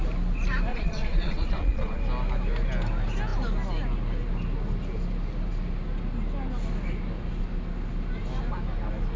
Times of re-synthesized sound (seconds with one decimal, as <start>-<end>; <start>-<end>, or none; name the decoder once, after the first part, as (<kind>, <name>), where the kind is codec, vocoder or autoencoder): 0.7-2.0 (vocoder, Vocos)